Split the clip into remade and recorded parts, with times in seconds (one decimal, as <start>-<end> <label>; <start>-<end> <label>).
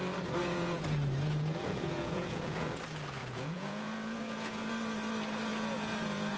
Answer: 0.0-0.4 recorded; 0.4-2.7 remade; 2.7-3.2 recorded; 3.2-4.7 remade; 4.7-5.5 recorded; 5.5-6.4 remade